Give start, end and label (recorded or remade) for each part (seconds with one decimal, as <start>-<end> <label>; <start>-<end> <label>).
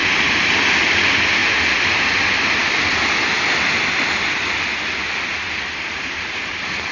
0.0-6.9 recorded